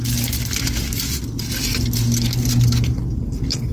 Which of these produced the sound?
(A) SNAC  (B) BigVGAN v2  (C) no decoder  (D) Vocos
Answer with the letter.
C